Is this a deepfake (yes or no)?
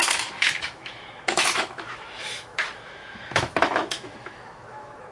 yes